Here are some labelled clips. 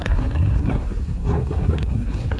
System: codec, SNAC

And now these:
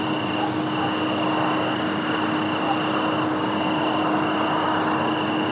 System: none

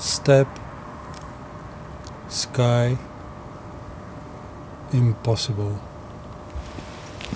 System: none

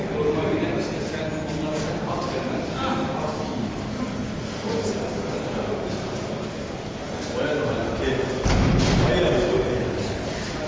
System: none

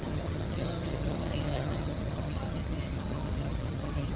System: vocoder, HiFi-GAN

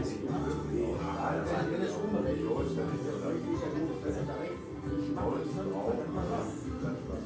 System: none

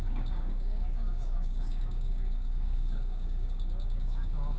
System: codec, DAC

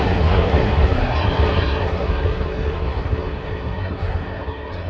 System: codec, SNAC